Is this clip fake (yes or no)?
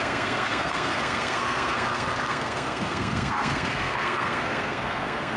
yes